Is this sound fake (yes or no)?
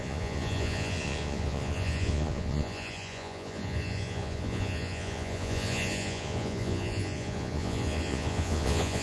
yes